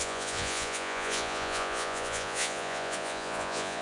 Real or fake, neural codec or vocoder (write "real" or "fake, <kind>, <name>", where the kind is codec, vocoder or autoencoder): fake, vocoder, Vocos